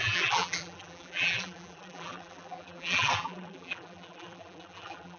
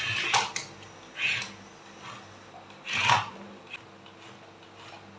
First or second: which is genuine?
second